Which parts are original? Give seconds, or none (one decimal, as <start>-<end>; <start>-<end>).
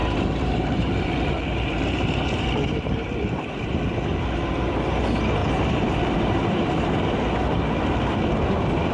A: 4.2-5.4; 7.7-8.9